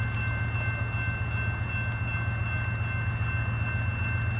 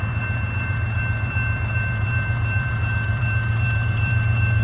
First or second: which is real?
first